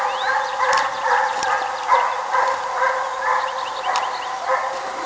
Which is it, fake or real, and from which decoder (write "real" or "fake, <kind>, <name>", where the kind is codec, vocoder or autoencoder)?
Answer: real